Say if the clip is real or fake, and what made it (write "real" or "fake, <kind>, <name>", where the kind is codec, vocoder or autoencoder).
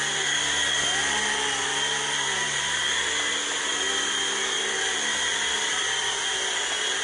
real